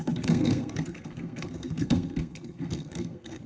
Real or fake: fake